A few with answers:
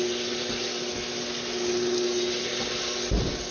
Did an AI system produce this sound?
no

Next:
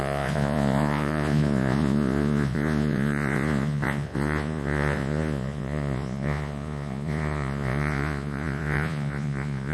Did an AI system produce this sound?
yes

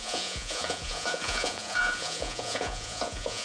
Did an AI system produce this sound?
yes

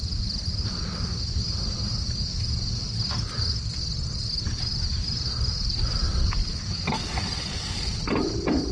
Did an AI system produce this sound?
no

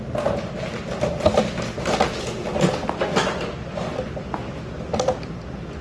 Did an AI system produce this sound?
no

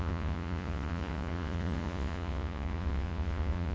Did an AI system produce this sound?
yes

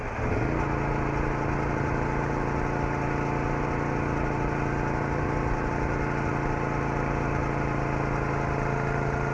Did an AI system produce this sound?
no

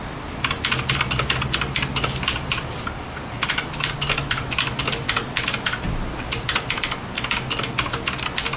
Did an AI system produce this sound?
no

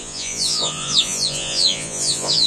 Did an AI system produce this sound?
yes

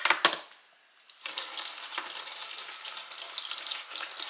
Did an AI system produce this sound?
no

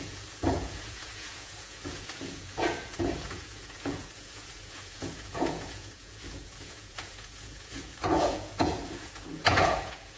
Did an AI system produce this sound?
yes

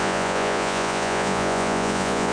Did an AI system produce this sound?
yes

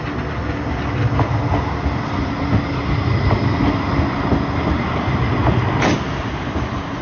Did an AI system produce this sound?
no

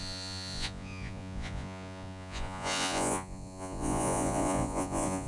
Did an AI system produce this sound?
yes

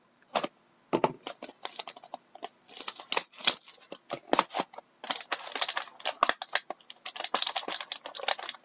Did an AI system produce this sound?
no